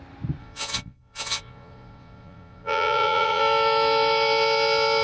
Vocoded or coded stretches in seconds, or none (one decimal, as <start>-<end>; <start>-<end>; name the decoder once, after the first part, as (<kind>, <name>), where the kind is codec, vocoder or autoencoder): 0.4-3.4 (vocoder, Vocos)